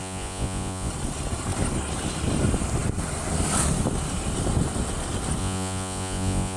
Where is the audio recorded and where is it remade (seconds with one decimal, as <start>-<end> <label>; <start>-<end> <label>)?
0.0-0.9 remade; 0.9-5.4 recorded; 5.4-6.6 remade